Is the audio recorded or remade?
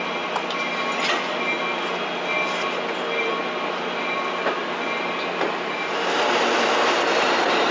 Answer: recorded